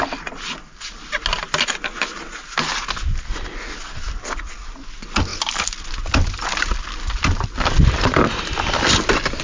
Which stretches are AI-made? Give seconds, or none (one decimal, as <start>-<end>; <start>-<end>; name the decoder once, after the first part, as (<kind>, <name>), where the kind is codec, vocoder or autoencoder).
none